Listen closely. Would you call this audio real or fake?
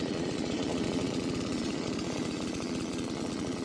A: fake